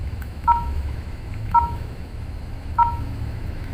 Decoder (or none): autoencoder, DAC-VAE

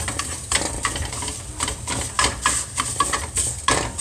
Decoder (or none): none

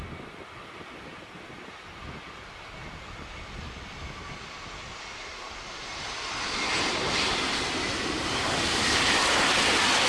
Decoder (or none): none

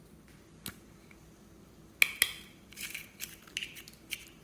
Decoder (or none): none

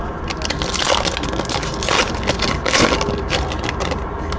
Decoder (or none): none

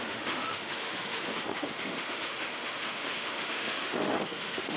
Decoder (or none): autoencoder, DAC-VAE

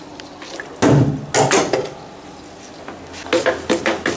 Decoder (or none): none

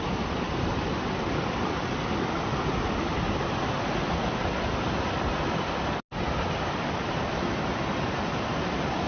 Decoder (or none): none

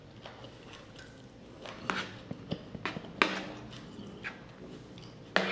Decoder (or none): none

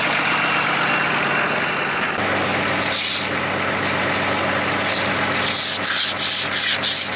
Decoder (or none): none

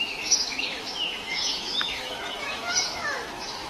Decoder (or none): autoencoder, DAC-VAE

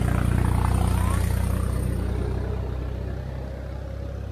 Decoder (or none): none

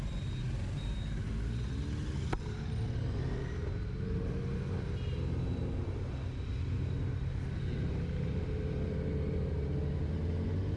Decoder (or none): none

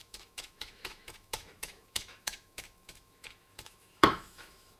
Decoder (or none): autoencoder, DAC-VAE